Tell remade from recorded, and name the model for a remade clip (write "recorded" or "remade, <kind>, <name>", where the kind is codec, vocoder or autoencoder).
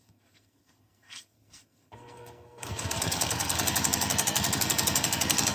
remade, codec, SNAC